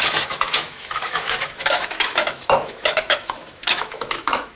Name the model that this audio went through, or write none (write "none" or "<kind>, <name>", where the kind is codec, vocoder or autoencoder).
autoencoder, DAC-VAE